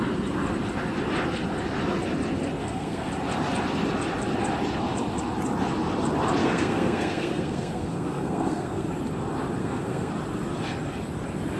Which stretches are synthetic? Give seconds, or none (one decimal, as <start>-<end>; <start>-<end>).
2.6-3.1; 6.4-8.9; 9.6-10.1